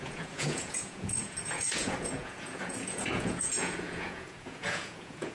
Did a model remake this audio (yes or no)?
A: yes